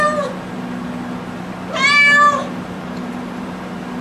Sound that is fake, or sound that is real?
real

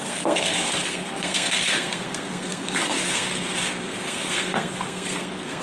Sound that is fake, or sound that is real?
fake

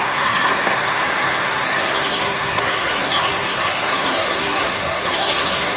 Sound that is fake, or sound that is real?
fake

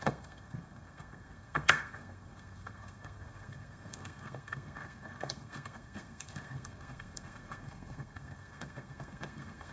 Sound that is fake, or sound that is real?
fake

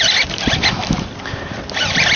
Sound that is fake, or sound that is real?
real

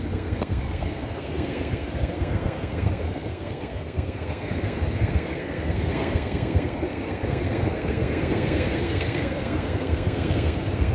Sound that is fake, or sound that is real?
fake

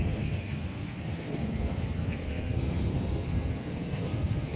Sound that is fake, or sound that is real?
fake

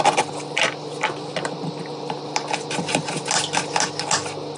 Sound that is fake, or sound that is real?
real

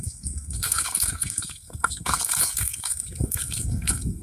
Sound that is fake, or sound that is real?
fake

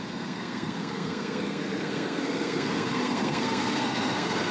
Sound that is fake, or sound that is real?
fake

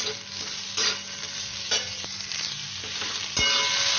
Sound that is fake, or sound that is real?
real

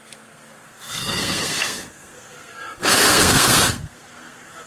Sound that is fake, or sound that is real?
fake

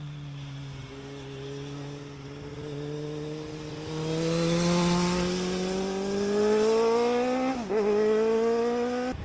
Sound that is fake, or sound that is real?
real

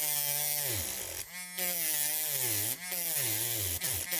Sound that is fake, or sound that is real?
real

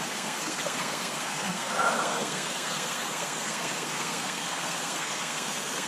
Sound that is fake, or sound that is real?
fake